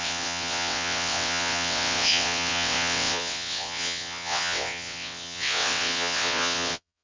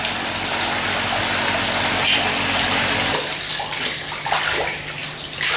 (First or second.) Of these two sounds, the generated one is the first